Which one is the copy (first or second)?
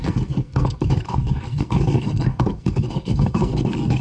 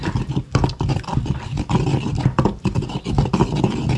first